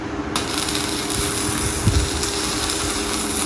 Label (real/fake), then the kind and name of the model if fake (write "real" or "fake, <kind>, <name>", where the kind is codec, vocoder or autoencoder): real